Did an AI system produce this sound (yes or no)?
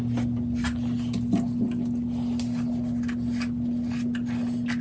no